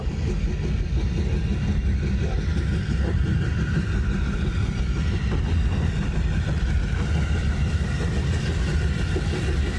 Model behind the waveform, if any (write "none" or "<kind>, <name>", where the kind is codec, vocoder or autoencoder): none